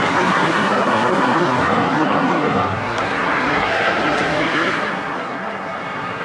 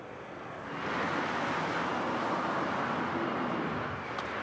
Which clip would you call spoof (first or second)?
first